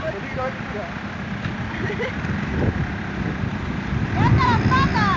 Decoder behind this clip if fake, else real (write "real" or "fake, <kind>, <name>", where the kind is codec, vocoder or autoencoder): real